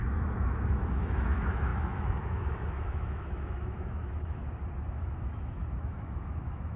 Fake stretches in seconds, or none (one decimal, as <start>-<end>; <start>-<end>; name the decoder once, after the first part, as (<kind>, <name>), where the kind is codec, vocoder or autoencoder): 0.0-4.4 (autoencoder, DAC-VAE); 4.9-6.8